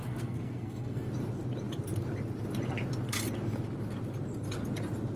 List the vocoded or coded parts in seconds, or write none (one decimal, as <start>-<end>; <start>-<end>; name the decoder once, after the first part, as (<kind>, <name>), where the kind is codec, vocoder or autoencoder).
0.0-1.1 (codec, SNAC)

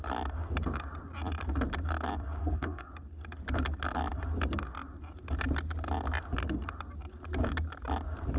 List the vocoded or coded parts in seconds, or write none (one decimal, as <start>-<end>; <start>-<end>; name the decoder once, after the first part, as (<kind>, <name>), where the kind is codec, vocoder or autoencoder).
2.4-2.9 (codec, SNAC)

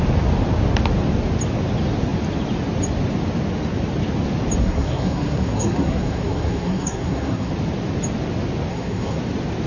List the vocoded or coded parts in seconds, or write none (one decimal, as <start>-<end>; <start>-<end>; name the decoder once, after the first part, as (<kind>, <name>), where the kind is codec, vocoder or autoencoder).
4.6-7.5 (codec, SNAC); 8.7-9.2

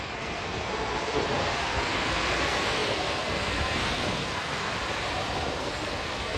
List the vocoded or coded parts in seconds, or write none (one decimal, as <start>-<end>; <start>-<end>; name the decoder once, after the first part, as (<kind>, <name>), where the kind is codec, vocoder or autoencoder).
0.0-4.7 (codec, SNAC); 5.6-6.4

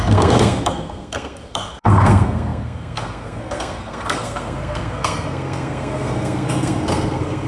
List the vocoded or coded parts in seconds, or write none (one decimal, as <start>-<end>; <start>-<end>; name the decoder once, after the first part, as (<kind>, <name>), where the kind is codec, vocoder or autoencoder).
0.0-7.5 (codec, SNAC)

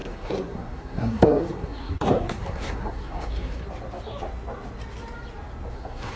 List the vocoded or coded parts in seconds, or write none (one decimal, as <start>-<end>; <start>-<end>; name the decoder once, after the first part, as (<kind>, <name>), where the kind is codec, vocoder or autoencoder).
0.0-3.6 (codec, SNAC); 5.7-6.2